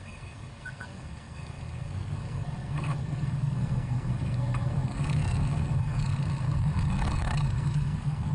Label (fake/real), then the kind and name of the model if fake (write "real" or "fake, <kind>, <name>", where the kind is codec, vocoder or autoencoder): fake, codec, SNAC